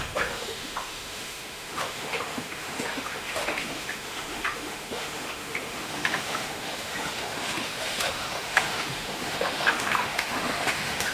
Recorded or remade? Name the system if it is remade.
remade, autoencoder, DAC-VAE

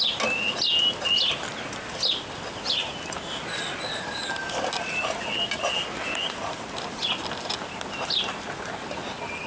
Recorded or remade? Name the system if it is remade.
recorded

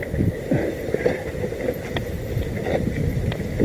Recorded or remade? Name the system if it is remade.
recorded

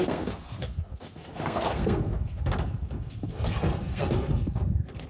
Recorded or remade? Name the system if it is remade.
remade, codec, SNAC